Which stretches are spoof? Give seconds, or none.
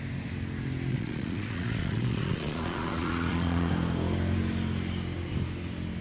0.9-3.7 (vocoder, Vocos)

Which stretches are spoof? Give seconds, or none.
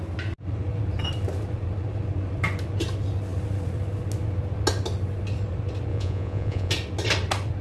5.9-6.7 (vocoder, Vocos)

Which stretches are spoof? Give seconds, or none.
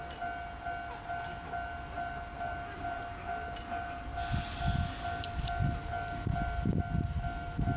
none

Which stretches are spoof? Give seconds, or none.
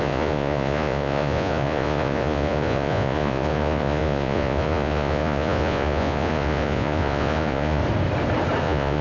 0.0-7.8 (vocoder, Vocos); 8.6-9.0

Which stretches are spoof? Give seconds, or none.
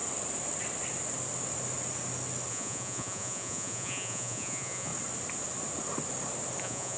2.5-4.9 (vocoder, Vocos); 6.6-7.0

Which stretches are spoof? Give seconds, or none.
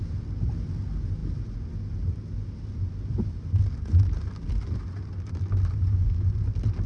none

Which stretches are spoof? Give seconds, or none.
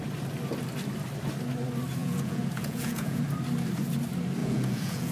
2.0-3.2 (vocoder, Vocos); 4.4-5.1